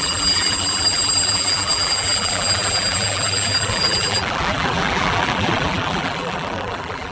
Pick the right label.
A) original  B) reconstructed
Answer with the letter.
B